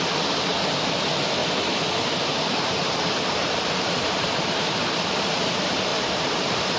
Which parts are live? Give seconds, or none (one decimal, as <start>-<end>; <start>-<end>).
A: 0.0-1.4; 5.5-5.9